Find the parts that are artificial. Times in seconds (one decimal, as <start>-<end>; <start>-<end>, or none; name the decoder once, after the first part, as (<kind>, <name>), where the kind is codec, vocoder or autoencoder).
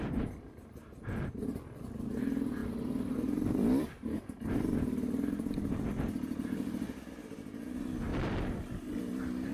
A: 2.6-5.5 (vocoder, BigVGAN v2); 8.1-9.0